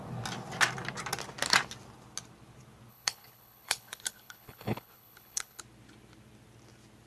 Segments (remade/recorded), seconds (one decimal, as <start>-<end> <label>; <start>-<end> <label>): 0.0-2.9 recorded; 2.9-5.6 remade; 5.6-7.1 recorded